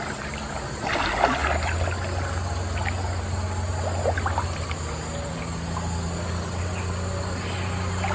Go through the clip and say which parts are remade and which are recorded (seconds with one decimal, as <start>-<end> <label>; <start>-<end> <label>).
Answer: 0.0-8.1 recorded